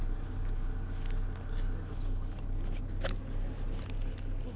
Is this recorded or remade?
recorded